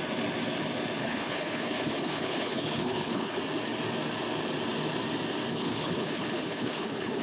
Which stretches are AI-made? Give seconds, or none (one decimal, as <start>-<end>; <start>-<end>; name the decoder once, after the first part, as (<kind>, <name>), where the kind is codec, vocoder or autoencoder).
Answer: 1.0-3.4 (codec, HILCodec); 5.5-7.2

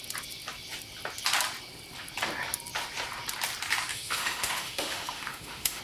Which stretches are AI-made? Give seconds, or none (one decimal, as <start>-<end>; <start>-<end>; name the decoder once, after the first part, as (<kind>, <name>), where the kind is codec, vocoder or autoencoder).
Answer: 3.9-5.8 (autoencoder, DAC-VAE)

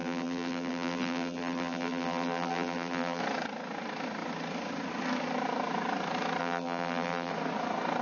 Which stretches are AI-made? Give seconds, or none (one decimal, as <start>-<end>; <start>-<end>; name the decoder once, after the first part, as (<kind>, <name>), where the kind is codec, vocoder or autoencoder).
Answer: 0.0-3.2 (vocoder, BigVGAN v2); 6.4-7.3

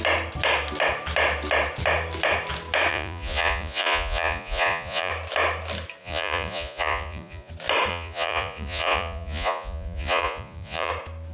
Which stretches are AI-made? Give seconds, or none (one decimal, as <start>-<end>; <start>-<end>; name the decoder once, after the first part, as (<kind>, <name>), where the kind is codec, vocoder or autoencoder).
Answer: 2.9-5.1 (vocoder, Vocos); 6.0-7.5; 7.9-10.9

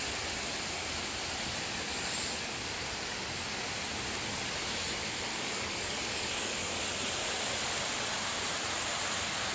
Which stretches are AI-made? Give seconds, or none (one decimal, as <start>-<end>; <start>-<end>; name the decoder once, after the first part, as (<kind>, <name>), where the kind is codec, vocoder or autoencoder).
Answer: 5.3-6.8 (codec, DAC)

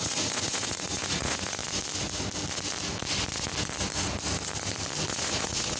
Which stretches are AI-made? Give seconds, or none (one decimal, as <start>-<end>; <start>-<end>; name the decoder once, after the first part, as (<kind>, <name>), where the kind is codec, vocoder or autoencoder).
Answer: 0.0-1.6 (vocoder, Vocos); 5.1-5.8

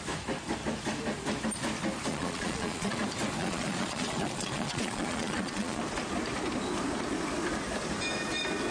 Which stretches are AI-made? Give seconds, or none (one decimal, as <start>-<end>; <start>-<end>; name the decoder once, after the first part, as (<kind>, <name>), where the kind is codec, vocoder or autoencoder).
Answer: 2.1-3.0 (vocoder, Vocos); 3.4-5.8

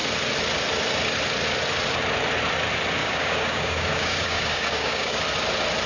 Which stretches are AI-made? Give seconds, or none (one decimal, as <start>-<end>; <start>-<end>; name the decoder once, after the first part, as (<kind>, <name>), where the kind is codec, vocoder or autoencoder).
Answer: 3.0-5.2 (codec, DAC)